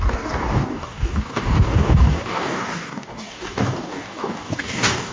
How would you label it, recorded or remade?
remade